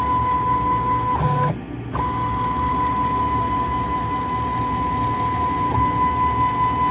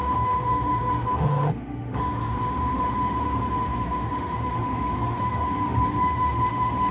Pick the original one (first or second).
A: first